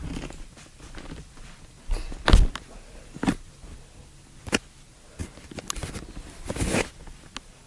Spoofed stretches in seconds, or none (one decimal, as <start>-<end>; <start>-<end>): none